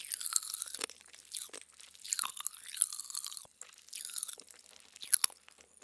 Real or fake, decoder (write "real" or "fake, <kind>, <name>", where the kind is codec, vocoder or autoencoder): real